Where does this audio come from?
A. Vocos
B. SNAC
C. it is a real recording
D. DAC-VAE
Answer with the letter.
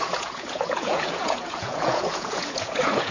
A